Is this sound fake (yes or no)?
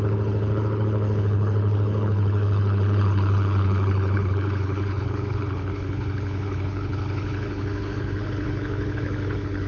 yes